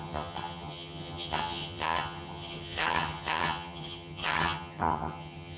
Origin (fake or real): fake